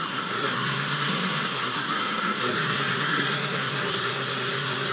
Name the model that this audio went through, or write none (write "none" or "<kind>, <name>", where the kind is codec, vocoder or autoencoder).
codec, SNAC